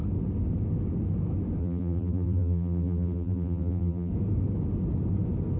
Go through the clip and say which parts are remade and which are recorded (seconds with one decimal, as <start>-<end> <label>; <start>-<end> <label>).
0.0-1.6 recorded; 1.6-4.1 remade; 4.1-5.6 recorded